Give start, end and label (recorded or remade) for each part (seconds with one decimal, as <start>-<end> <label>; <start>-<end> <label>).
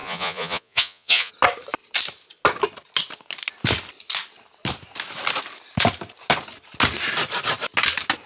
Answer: 0.0-1.3 remade; 1.3-8.3 recorded